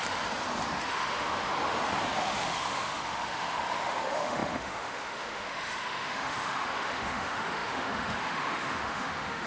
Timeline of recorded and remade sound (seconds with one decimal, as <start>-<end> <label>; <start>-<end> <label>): 0.0-0.9 recorded; 0.9-1.5 remade; 1.5-2.2 recorded; 2.2-9.5 remade